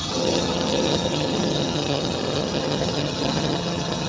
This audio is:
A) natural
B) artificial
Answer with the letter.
B